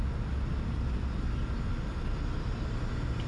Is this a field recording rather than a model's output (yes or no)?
yes